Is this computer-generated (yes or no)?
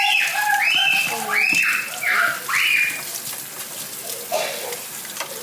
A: no